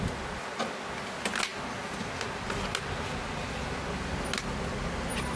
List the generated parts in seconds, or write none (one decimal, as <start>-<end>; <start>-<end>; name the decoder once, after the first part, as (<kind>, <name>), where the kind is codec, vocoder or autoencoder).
none